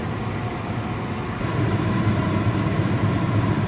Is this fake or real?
real